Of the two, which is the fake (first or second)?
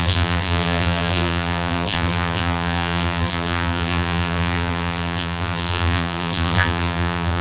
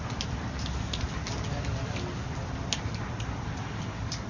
first